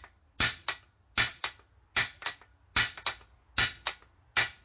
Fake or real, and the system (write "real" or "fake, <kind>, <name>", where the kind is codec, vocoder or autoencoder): real